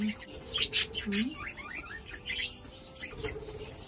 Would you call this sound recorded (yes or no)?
yes